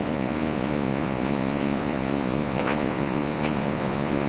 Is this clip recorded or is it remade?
remade